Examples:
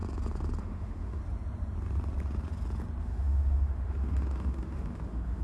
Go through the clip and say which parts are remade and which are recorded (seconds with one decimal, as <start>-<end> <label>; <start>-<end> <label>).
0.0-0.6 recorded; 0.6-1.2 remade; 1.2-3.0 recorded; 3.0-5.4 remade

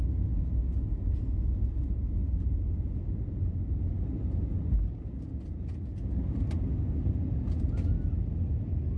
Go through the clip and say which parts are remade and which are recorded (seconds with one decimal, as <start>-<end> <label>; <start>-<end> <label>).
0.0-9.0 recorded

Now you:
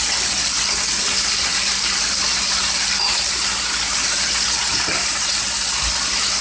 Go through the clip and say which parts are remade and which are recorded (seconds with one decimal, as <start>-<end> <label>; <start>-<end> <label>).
0.0-1.5 recorded; 1.5-5.3 remade; 5.3-6.4 recorded